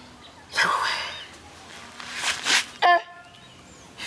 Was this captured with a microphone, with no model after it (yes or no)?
yes